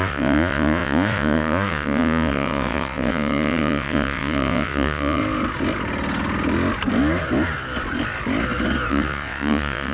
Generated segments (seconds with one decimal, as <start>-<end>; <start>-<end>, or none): 0.0-5.2; 8.9-9.9